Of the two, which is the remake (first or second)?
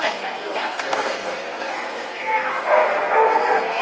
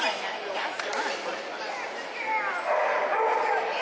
first